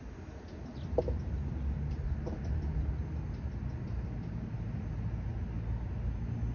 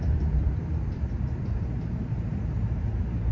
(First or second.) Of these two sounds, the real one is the first